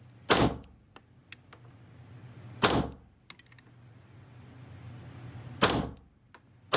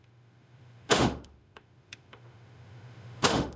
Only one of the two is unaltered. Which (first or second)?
first